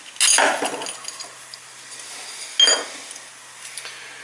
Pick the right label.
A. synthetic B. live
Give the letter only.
B